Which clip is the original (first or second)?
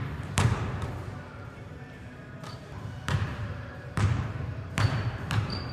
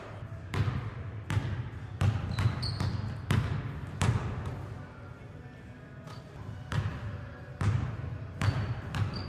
second